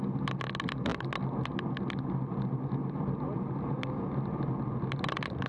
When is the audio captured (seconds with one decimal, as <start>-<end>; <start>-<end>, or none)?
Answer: 0.0-5.5